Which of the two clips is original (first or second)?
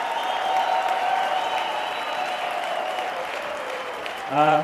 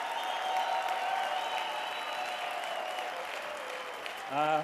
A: second